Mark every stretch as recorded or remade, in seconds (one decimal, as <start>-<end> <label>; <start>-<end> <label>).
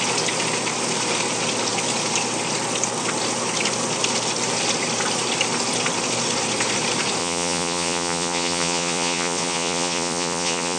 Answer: 0.0-7.2 recorded; 7.2-10.8 remade